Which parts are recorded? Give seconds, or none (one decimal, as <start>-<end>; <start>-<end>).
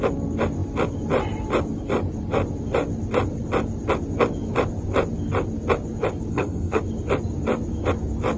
0.0-6.3; 6.8-8.4